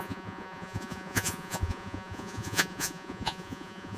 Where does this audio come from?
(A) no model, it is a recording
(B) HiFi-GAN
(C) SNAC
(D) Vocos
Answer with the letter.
D